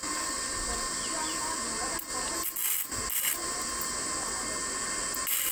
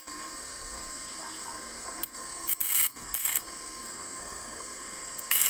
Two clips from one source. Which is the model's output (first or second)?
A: second